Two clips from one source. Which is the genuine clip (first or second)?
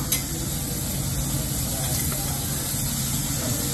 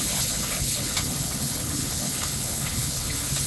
first